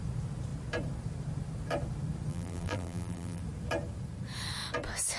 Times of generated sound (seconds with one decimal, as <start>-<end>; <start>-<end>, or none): 2.3-3.4